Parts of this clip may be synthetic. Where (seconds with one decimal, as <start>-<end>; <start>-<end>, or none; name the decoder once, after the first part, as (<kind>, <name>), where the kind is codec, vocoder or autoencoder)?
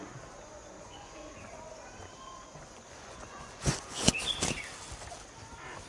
0.4-1.9 (vocoder, Vocos); 2.3-4.1